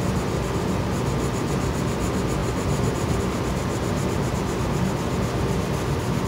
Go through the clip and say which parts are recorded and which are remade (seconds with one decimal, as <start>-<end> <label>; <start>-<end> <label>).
0.0-6.3 recorded